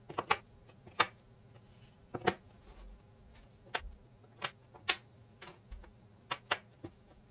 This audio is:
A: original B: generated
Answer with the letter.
A